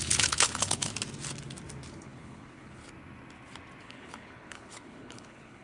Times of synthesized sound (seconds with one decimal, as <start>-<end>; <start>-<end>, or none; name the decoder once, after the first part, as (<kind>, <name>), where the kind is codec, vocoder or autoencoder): 0.0-0.9 (codec, HILCodec); 1.9-2.8; 3.8-5.6